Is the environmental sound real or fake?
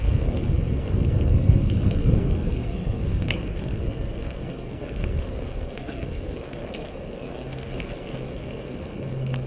fake